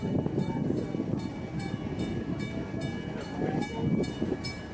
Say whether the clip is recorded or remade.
recorded